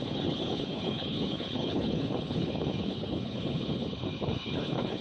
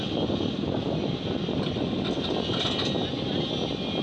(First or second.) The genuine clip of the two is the second